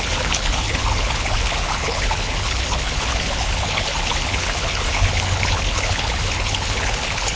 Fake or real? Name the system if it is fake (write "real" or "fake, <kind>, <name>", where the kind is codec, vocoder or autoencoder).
fake, codec, HILCodec